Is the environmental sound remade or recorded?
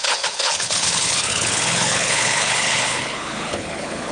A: remade